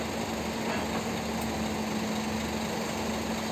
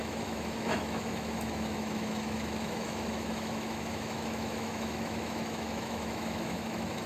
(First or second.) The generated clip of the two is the second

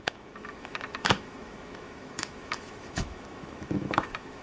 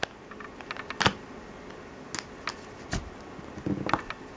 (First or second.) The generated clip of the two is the first